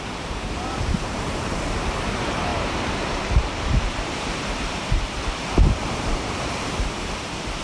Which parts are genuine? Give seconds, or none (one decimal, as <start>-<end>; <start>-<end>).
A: none